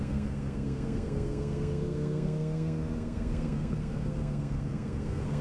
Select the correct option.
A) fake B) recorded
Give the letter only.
A